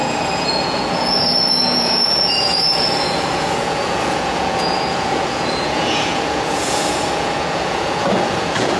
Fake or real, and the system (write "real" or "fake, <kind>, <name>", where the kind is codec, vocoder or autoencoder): fake, vocoder, Vocos